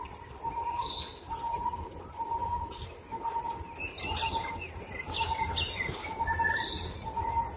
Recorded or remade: recorded